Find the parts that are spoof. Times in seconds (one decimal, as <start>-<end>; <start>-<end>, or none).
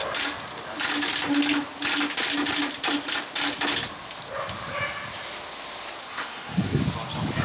6.0-6.8